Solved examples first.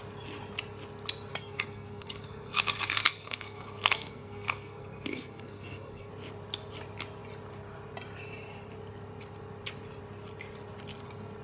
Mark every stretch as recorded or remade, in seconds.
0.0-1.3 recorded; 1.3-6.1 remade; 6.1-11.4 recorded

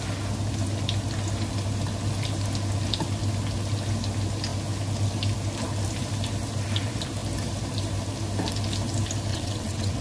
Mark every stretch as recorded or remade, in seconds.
0.0-9.3 recorded; 9.3-10.0 remade

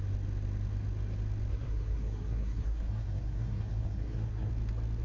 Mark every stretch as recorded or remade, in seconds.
0.0-1.5 recorded; 1.5-4.5 remade; 4.5-5.0 recorded

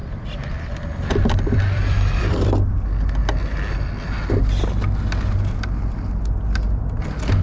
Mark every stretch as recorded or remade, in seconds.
0.0-2.8 remade; 2.8-7.4 recorded

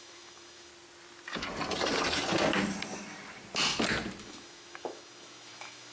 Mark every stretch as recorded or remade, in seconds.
0.0-0.7 remade; 0.7-4.2 recorded; 4.2-5.9 remade

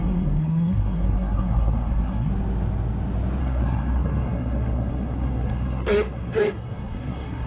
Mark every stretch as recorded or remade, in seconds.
0.0-2.3 remade; 2.3-3.4 recorded; 3.4-7.5 remade

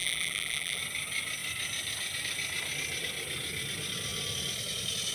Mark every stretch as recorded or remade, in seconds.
0.0-0.8 remade; 0.8-5.1 recorded